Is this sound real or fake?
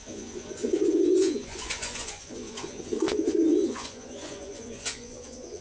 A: fake